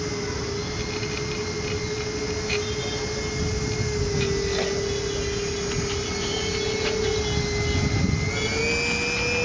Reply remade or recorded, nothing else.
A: recorded